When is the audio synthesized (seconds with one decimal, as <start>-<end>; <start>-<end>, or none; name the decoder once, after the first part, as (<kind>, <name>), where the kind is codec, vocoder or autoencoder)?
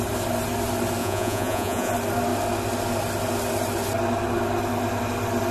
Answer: 1.0-1.9 (vocoder, Vocos)